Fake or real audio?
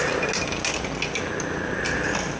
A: real